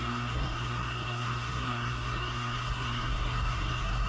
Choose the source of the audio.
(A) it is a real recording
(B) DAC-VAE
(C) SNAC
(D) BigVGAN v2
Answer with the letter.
C